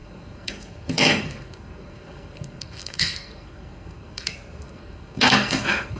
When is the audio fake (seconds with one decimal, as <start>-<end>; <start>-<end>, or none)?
0.0-6.0